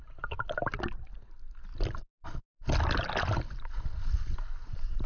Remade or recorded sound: recorded